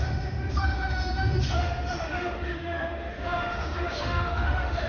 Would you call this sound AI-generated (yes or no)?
yes